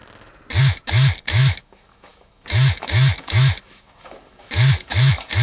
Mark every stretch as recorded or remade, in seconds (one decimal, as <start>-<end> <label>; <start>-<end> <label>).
0.0-0.6 recorded; 0.6-5.4 remade